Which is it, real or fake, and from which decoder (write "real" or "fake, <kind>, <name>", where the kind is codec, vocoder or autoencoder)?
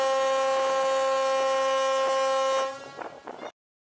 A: real